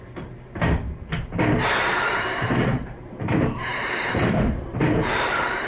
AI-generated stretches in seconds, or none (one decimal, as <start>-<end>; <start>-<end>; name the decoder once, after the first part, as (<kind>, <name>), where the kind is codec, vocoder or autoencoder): 0.0-5.7 (vocoder, BigVGAN v2)